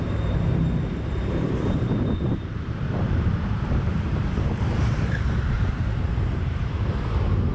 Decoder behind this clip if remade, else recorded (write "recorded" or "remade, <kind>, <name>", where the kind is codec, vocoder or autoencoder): remade, vocoder, BigVGAN v2